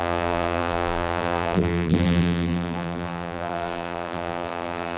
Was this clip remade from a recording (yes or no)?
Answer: yes